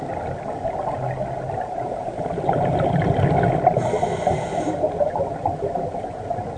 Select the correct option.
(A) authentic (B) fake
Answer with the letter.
A